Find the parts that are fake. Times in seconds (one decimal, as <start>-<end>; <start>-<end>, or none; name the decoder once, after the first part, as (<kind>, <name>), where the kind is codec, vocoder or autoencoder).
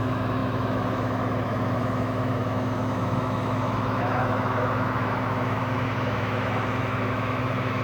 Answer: 0.0-7.8 (autoencoder, DAC-VAE)